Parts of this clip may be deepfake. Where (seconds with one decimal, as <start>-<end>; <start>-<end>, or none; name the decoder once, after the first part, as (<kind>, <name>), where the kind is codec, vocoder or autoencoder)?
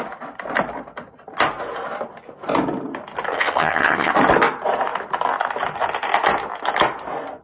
3.3-4.1 (vocoder, HiFi-GAN)